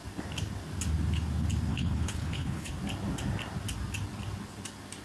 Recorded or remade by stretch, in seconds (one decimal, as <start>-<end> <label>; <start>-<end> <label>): 0.0-1.7 recorded; 1.7-2.7 remade; 2.7-5.0 recorded